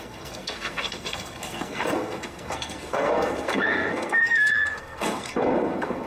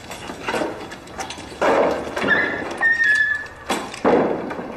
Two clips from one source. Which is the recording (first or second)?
second